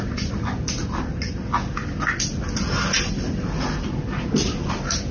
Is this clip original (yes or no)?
yes